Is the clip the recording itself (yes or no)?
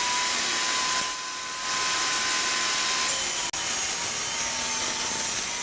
yes